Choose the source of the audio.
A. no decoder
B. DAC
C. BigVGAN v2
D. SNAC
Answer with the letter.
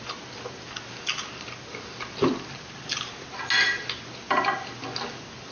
A